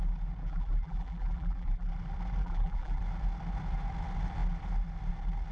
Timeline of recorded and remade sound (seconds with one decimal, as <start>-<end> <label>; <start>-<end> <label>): 0.0-0.4 recorded; 0.4-1.9 remade; 1.9-2.4 recorded; 2.4-3.0 remade; 3.0-5.5 recorded